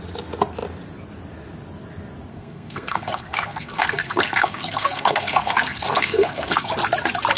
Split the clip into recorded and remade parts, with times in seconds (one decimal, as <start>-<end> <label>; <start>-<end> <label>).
0.0-2.3 recorded; 2.3-6.7 remade; 6.7-7.4 recorded